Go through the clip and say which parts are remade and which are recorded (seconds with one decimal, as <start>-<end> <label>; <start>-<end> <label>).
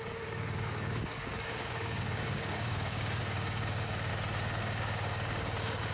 0.0-4.1 remade; 4.1-4.6 recorded; 4.6-5.9 remade